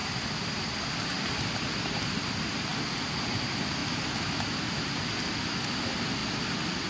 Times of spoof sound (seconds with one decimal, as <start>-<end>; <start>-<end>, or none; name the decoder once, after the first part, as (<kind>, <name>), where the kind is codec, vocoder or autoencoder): 0.0-2.7 (vocoder, BigVGAN v2); 3.4-3.8; 4.5-6.2